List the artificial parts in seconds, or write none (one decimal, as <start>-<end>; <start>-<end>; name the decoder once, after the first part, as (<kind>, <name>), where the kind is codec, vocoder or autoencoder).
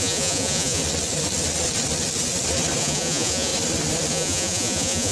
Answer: 0.0-0.8 (vocoder, Vocos); 2.8-3.5; 4.1-5.1